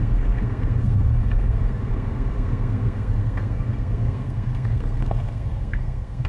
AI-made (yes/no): yes